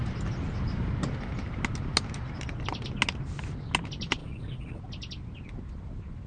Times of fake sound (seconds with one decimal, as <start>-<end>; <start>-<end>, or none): 4.2-4.8